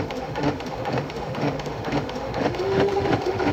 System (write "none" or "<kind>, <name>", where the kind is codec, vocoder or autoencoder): autoencoder, DAC-VAE